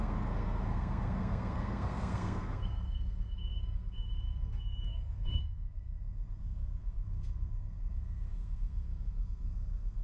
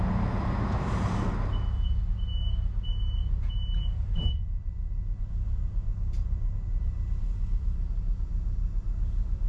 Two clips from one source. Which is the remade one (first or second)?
first